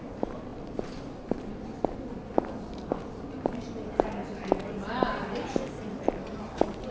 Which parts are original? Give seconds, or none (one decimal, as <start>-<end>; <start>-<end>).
0.0-6.9